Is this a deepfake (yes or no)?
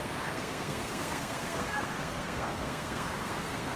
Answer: yes